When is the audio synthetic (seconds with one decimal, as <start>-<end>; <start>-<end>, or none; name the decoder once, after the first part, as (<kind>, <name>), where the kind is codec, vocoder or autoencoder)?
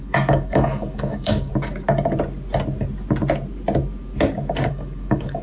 0.0-1.5 (codec, DAC); 4.7-5.4